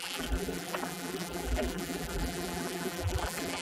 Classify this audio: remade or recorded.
remade